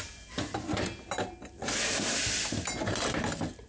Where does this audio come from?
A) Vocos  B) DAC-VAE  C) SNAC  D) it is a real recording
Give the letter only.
D